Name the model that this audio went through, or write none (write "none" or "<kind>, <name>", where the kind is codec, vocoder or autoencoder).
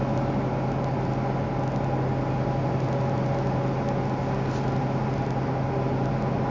none